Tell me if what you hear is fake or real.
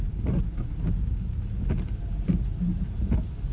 real